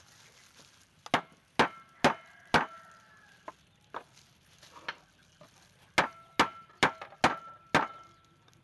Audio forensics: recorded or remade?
recorded